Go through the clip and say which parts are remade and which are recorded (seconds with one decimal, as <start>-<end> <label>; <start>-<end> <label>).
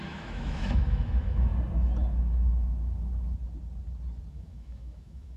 0.0-1.5 remade; 1.5-4.3 recorded; 4.3-5.4 remade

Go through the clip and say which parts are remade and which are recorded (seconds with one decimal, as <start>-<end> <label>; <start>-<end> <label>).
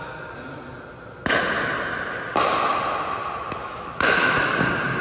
0.0-3.6 recorded; 3.6-4.4 remade; 4.4-5.0 recorded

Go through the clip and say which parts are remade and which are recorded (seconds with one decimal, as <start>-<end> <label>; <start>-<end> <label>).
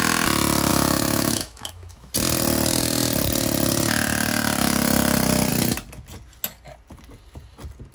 0.0-0.7 recorded; 0.7-2.1 remade; 2.1-7.9 recorded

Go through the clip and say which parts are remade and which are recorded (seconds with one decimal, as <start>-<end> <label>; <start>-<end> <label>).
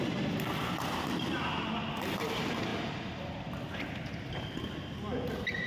0.0-5.7 recorded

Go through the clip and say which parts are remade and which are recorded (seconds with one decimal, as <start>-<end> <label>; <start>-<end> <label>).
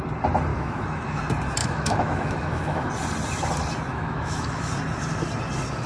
0.0-0.5 recorded; 0.5-1.2 remade; 1.2-1.6 recorded; 1.6-2.9 remade; 2.9-3.9 recorded; 3.9-4.7 remade; 4.7-5.9 recorded